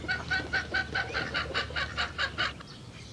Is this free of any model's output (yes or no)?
yes